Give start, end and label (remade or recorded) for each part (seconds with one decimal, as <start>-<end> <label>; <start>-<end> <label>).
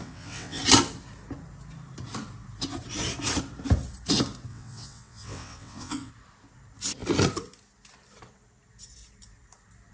0.0-0.6 remade; 0.6-4.5 recorded; 4.5-6.1 remade; 6.1-9.9 recorded